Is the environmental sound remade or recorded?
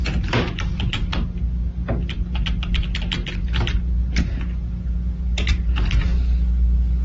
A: recorded